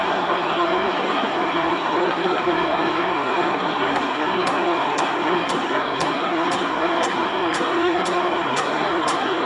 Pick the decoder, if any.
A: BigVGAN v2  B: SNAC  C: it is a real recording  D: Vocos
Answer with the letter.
B